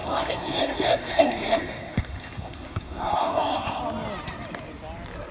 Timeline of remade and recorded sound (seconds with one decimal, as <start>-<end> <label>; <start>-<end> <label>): 0.0-3.8 remade; 3.8-5.3 recorded